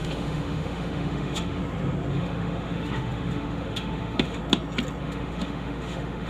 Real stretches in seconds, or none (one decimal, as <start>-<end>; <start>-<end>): 1.6-2.1; 4.4-5.0